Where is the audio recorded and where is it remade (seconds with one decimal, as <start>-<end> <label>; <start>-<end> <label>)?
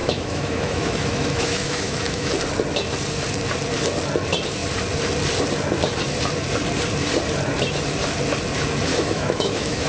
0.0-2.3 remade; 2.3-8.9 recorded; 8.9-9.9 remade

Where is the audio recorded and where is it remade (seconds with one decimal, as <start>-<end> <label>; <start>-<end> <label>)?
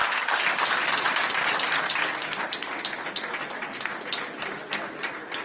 0.0-5.4 recorded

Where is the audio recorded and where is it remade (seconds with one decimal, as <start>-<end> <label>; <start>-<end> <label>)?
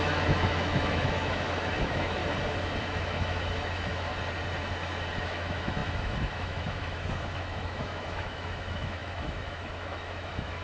0.0-2.2 remade; 2.2-2.8 recorded; 2.8-4.1 remade; 4.1-5.2 recorded; 5.2-10.6 remade